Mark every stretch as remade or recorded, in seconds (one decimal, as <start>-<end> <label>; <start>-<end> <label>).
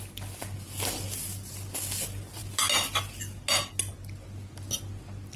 0.0-5.4 recorded